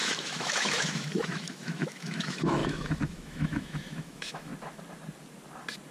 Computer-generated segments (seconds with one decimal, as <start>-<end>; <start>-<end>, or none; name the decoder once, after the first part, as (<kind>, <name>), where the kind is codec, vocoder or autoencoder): 0.0-4.5 (autoencoder, DAC-VAE)